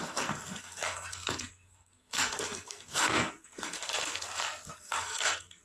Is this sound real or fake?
fake